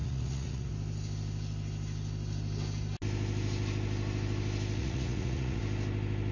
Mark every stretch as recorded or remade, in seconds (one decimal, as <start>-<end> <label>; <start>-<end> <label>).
0.0-0.7 remade; 0.7-4.8 recorded; 4.8-5.6 remade; 5.6-6.3 recorded